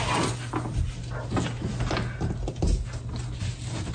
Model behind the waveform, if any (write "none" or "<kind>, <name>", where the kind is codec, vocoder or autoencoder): none